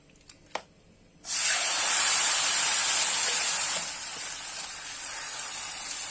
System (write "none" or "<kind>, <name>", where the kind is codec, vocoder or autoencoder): none